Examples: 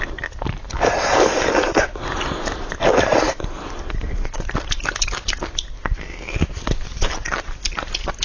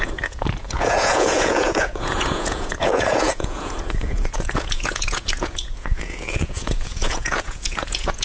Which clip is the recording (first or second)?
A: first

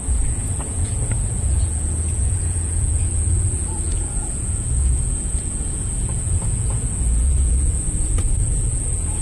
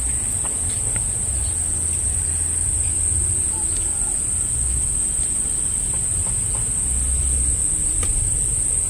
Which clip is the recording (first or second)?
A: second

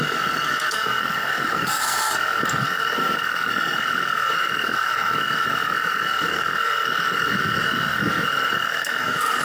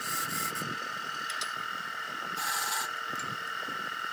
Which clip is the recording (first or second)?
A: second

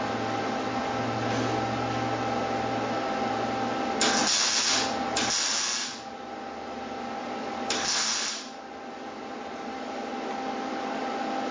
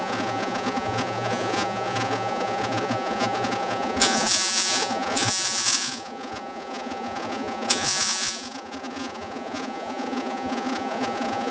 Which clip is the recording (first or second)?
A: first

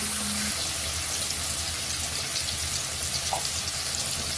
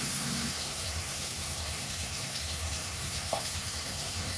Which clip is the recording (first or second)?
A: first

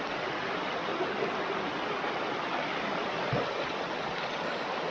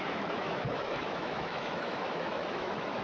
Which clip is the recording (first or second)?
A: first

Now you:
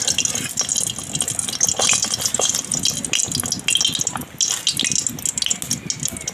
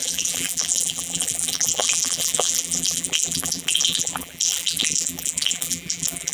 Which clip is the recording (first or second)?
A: first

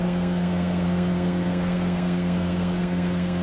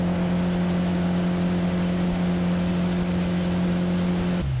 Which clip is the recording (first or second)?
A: second